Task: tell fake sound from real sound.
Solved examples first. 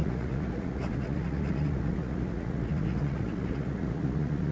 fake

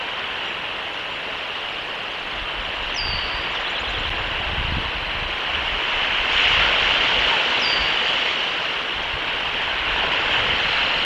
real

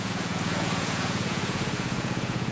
fake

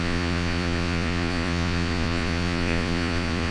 fake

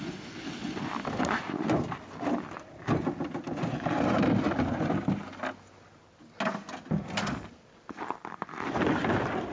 real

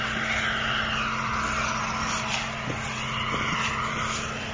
real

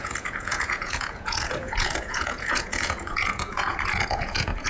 fake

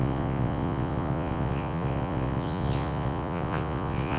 fake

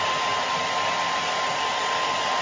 real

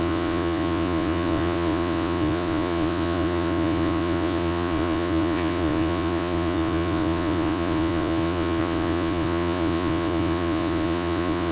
fake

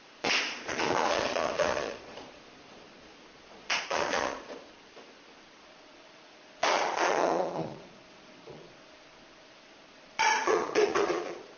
fake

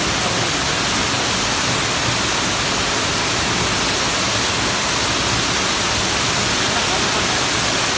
real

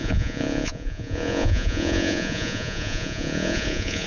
fake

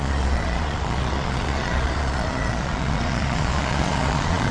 fake